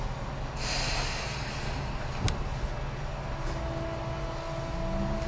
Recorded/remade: recorded